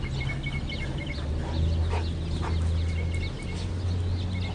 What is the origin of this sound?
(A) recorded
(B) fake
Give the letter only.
A